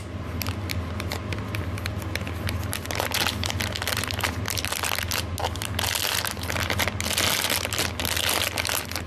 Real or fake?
real